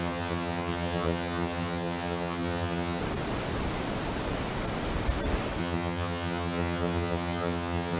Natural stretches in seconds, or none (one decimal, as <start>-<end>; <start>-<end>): 3.0-5.6